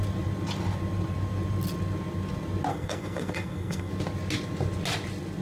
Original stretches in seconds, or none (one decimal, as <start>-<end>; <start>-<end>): 0.0-2.7; 3.9-5.4

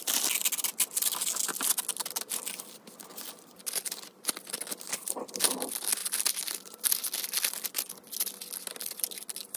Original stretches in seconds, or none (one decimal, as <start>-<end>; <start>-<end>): 0.0-9.6